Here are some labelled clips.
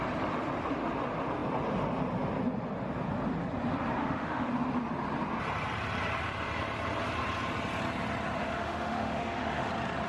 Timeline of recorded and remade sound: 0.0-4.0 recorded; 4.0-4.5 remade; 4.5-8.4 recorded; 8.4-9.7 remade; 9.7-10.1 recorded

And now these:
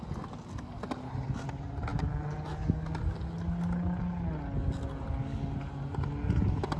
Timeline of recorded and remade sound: 0.0-6.8 recorded

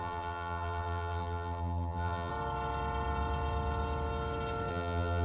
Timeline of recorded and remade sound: 0.0-2.3 remade; 2.3-4.7 recorded; 4.7-5.2 remade

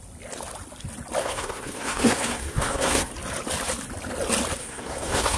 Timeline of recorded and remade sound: 0.0-1.2 recorded; 1.2-3.1 remade; 3.1-4.6 recorded; 4.6-5.4 remade

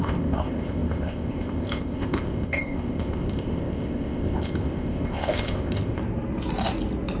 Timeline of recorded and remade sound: 0.0-6.0 remade; 6.0-7.2 recorded

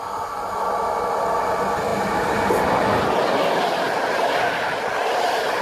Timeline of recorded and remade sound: 0.0-5.6 recorded